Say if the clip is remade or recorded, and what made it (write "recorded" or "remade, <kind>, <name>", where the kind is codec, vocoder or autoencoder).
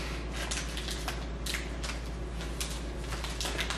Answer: recorded